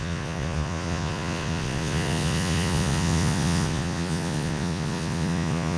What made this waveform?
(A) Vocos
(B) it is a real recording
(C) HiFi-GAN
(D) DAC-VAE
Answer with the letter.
A